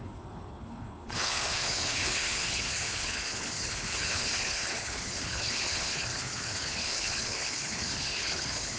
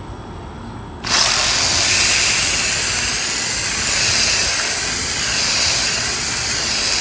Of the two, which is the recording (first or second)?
second